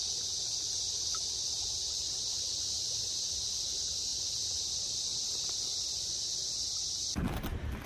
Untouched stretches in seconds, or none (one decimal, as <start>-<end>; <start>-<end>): 0.0-7.9